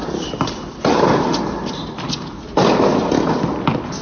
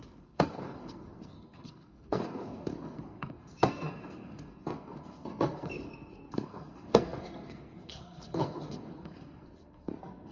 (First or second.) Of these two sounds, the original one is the first